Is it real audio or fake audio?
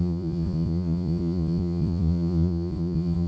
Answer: fake